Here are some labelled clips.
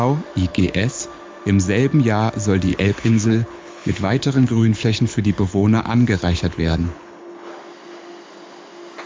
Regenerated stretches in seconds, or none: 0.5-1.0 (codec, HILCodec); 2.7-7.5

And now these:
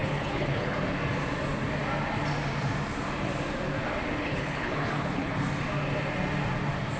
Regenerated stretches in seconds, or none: 0.0-0.8 (codec, HILCodec); 4.2-5.3

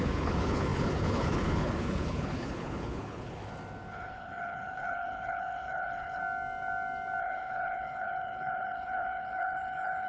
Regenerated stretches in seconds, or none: 0.0-3.4 (codec, HILCodec); 3.9-6.2; 7.2-10.1

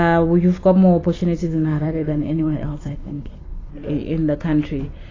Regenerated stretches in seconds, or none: 1.4-3.7 (codec, HILCodec)

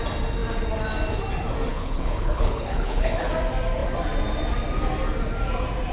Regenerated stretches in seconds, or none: 1.7-3.3 (codec, HILCodec)